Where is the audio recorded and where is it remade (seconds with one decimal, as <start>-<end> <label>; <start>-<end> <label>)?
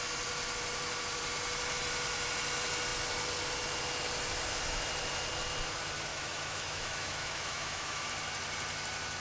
0.0-6.1 recorded; 6.1-8.1 remade; 8.1-9.2 recorded